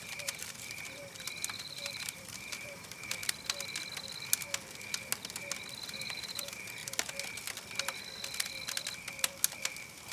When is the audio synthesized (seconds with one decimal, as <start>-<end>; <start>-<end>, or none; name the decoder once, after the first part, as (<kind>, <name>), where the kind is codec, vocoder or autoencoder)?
0.0-1.0 (vocoder, BigVGAN v2); 1.6-3.2; 5.8-6.8